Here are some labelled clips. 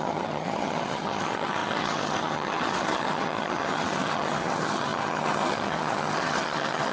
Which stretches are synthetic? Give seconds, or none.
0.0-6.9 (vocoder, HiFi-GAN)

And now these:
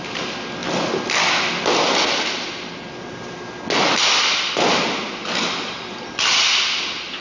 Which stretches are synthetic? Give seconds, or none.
none

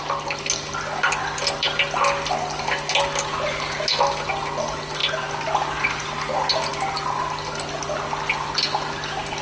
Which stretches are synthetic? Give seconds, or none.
none